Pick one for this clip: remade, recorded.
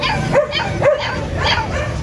recorded